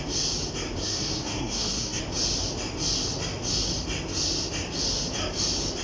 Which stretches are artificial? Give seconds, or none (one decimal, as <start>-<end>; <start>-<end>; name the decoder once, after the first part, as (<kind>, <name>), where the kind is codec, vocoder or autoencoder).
0.8-2.0 (codec, SNAC)